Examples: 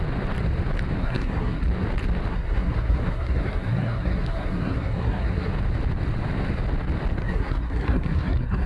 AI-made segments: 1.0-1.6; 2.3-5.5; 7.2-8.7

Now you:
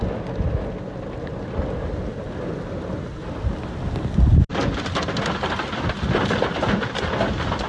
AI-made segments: none

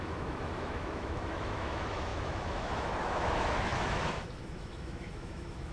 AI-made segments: 0.0-5.7

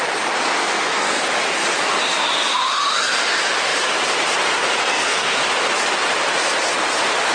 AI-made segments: 0.6-1.2; 4.8-5.4

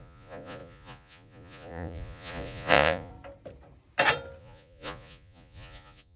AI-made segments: 0.0-3.1; 4.4-6.2

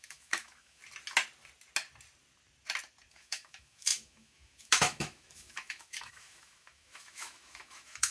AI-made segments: 0.0-0.8; 3.1-8.1

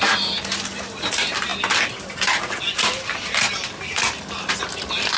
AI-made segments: none